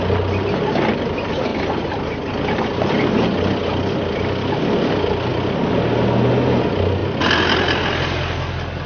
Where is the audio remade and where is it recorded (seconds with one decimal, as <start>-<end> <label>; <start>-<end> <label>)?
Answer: 0.0-8.9 recorded